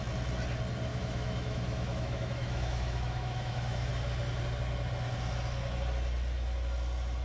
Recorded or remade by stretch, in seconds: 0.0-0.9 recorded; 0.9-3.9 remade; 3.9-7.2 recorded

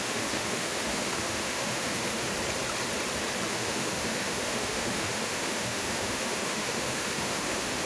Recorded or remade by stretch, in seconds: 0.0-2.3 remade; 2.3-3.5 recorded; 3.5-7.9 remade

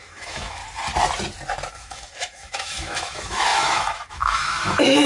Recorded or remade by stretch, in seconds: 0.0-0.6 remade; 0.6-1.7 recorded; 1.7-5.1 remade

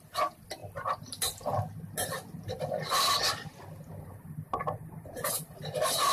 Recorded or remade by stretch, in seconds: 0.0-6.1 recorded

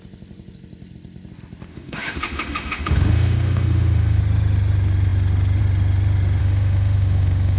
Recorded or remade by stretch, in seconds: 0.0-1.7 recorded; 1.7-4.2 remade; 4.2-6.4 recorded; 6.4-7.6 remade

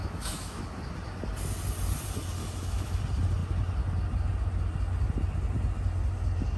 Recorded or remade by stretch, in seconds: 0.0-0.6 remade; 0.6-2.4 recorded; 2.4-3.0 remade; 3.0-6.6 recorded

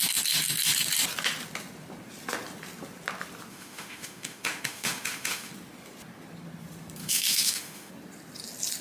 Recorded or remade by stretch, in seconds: 0.0-3.5 recorded; 3.5-5.5 remade; 5.5-7.0 recorded; 7.0-7.9 remade; 7.9-8.8 recorded

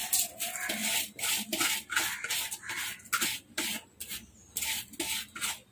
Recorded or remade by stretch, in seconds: 0.0-5.7 recorded